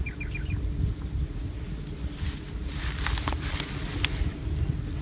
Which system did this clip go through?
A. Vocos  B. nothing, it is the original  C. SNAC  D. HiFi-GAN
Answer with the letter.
B